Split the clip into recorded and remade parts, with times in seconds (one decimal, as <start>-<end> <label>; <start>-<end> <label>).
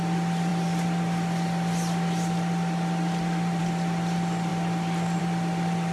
0.0-5.9 recorded